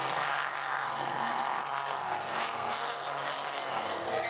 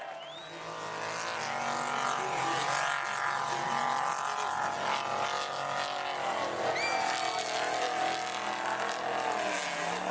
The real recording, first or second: second